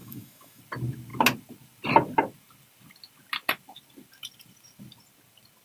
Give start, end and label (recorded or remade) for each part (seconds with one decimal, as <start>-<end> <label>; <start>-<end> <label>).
0.0-0.6 remade; 0.6-5.6 recorded